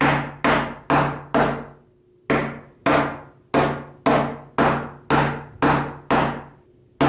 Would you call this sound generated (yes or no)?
no